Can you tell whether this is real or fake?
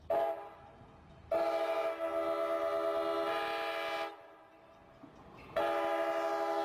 real